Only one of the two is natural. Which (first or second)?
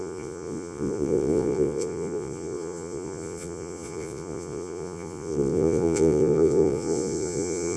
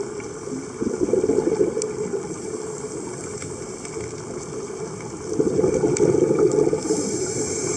second